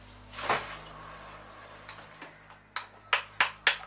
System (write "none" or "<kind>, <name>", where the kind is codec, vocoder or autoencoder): none